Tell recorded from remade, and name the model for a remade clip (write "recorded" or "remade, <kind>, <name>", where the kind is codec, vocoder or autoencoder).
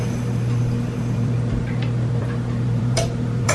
remade, vocoder, BigVGAN v2